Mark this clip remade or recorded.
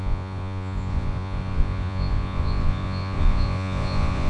remade